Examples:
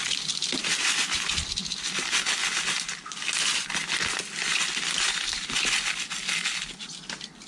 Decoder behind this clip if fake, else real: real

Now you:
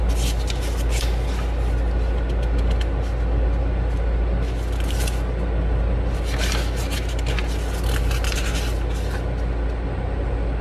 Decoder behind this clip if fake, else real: real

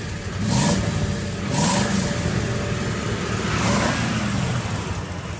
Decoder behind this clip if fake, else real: real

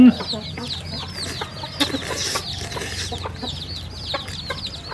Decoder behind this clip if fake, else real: real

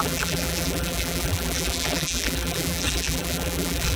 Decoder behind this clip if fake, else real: fake, vocoder, BigVGAN v2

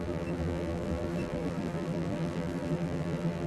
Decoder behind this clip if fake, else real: fake, vocoder, BigVGAN v2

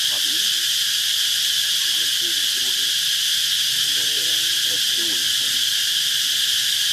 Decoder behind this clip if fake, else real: real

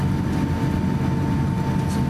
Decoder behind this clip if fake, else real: real